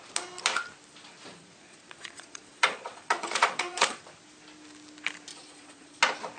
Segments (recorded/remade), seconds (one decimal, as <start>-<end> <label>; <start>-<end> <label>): 0.0-1.3 recorded; 1.3-4.0 remade; 4.0-5.3 recorded; 5.3-6.0 remade; 6.0-6.4 recorded